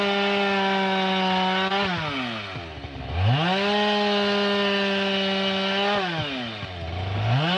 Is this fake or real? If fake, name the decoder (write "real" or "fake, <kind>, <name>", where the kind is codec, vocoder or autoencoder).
real